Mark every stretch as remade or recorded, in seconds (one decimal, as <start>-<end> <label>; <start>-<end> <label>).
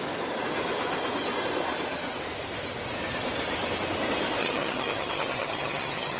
0.0-4.4 recorded; 4.4-6.2 remade